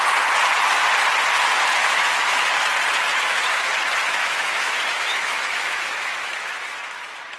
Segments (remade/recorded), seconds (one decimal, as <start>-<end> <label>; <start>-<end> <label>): 0.0-1.8 recorded; 1.8-2.5 remade; 2.5-3.1 recorded; 3.1-3.7 remade; 3.7-4.2 recorded; 4.2-7.4 remade